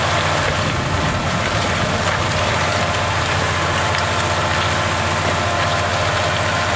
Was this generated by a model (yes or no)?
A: no